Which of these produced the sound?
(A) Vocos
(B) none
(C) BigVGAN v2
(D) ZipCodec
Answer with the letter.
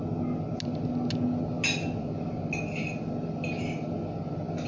B